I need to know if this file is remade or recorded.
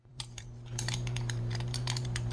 remade